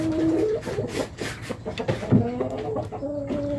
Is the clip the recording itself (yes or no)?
yes